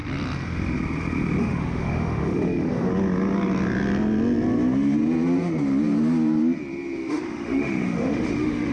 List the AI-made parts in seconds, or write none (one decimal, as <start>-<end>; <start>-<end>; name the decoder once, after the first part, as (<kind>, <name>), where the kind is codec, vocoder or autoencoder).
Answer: 1.4-2.9 (autoencoder, DAC-VAE); 7.1-8.7